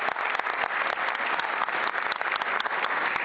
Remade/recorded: recorded